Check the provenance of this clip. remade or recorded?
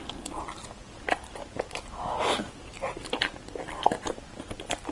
recorded